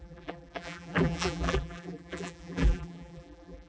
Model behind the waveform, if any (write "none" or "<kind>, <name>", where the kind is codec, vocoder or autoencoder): vocoder, BigVGAN v2